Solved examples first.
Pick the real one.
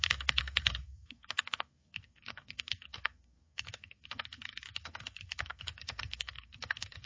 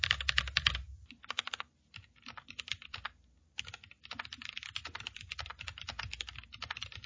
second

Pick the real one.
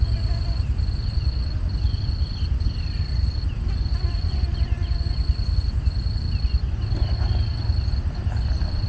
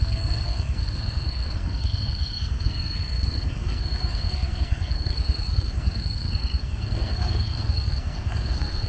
first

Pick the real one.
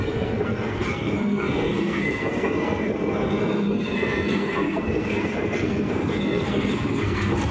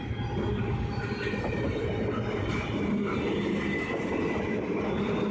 second